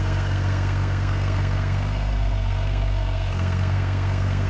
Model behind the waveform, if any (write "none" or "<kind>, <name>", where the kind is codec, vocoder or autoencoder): codec, SNAC